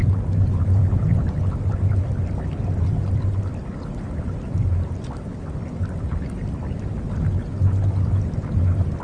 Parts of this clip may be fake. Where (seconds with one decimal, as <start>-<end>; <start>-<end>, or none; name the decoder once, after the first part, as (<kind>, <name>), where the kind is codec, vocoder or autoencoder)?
none